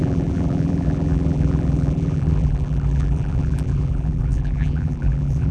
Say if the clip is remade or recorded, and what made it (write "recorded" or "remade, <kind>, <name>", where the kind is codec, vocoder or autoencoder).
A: remade, vocoder, BigVGAN v2